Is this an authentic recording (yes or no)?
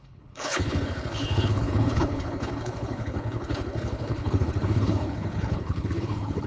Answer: no